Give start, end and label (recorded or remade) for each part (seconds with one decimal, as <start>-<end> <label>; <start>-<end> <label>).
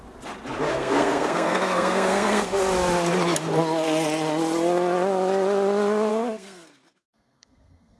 0.0-0.7 recorded; 0.7-2.6 remade; 2.6-6.1 recorded; 6.1-8.0 remade